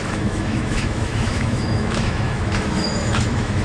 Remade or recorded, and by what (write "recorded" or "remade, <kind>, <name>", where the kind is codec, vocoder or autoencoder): remade, autoencoder, DAC-VAE